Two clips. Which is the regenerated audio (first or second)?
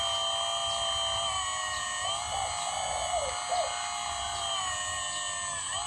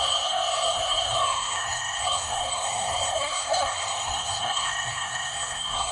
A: second